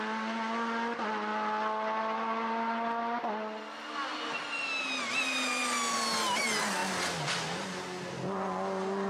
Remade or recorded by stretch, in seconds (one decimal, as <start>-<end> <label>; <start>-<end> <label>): 0.0-9.1 recorded